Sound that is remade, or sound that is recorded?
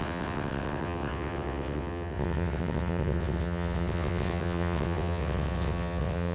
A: remade